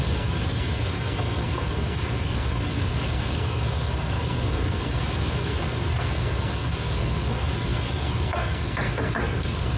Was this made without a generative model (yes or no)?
no